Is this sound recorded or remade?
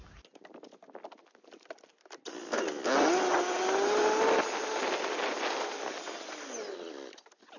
recorded